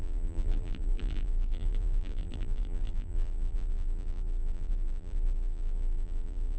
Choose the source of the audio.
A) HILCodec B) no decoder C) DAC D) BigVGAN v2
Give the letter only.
D